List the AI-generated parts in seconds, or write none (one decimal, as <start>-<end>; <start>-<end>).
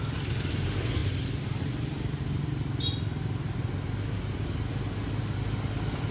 none